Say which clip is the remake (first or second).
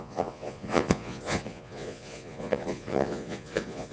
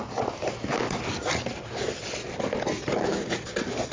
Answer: first